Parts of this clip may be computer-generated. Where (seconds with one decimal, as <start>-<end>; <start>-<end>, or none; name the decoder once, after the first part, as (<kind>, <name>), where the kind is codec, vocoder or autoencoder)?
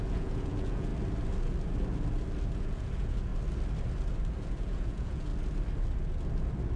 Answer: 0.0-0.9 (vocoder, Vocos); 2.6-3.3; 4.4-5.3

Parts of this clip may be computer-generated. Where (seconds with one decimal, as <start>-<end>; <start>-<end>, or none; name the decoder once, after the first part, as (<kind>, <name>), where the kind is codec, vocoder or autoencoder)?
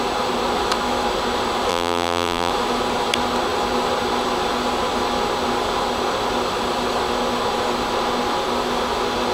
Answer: 1.7-2.5 (vocoder, BigVGAN v2)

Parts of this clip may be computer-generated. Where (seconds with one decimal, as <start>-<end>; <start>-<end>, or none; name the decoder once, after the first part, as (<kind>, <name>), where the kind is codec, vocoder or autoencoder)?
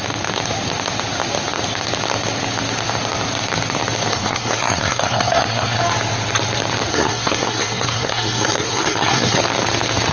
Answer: 4.1-5.8 (codec, SNAC); 6.9-9.4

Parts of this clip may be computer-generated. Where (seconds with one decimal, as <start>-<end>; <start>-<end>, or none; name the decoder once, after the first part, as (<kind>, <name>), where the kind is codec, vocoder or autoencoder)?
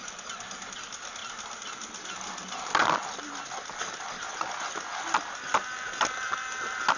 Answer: none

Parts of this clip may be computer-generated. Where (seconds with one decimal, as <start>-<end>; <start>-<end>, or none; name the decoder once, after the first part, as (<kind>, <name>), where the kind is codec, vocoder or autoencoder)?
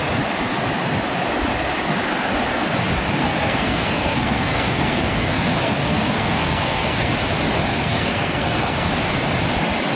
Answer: 3.2-7.1 (codec, SNAC); 7.7-8.9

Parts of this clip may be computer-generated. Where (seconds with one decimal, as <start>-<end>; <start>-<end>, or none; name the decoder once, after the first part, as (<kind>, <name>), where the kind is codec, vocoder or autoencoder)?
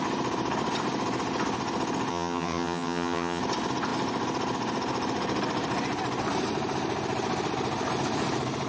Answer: 2.1-3.4 (vocoder, HiFi-GAN)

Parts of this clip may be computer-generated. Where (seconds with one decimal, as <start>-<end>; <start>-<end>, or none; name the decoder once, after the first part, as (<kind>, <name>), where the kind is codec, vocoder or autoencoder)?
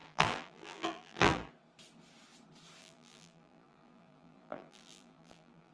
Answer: 0.0-1.5 (vocoder, BigVGAN v2); 2.8-5.7